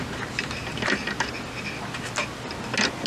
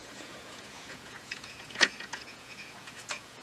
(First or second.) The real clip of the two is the first